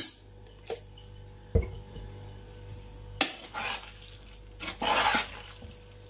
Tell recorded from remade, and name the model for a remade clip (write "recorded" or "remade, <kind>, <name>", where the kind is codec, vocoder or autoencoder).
recorded